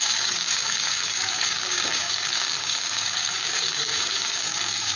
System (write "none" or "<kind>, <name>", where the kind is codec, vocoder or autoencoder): codec, DAC